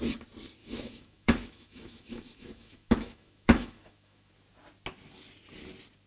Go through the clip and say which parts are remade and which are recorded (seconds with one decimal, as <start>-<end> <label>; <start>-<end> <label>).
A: 0.0-0.6 recorded; 0.6-4.3 remade; 4.3-6.1 recorded